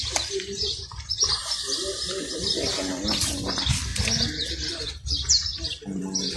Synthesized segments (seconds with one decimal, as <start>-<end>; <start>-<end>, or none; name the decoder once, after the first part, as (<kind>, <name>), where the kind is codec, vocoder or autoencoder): 0.0-3.9 (vocoder, BigVGAN v2); 4.7-6.4